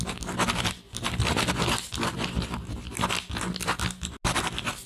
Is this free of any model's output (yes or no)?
yes